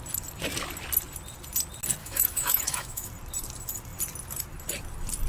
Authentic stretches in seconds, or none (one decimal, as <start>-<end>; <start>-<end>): 0.0-2.0; 3.1-5.3